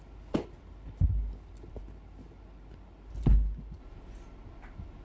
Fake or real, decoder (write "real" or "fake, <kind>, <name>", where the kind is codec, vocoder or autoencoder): real